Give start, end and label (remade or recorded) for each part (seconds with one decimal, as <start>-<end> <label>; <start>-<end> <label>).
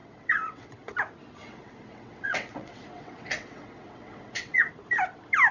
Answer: 0.0-0.9 remade; 0.9-1.4 recorded; 1.4-4.7 remade; 4.7-5.5 recorded